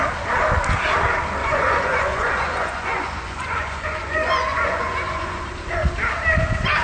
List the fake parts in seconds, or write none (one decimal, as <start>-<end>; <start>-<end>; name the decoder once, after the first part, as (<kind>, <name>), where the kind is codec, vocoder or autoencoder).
1.4-5.5 (vocoder, Vocos)

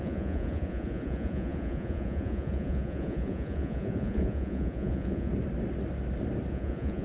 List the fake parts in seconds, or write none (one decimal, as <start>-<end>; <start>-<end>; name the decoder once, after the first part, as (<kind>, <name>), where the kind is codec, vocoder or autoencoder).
0.0-5.3 (vocoder, Vocos); 6.5-7.0

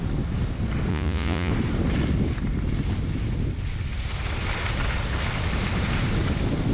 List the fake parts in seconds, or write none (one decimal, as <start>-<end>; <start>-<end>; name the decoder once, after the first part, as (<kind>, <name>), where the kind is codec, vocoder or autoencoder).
0.9-1.5 (vocoder, Vocos)

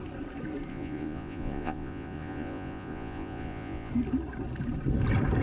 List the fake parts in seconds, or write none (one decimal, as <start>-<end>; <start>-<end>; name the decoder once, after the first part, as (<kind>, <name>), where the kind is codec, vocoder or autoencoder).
0.7-3.9 (vocoder, Vocos)

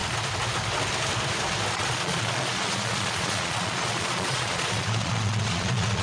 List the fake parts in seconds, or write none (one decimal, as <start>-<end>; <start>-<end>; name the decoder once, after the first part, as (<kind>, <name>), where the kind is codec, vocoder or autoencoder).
1.7-6.0 (vocoder, Vocos)

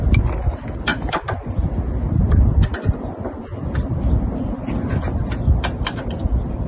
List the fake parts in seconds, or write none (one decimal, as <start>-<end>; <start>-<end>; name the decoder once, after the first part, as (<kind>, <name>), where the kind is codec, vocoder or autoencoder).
none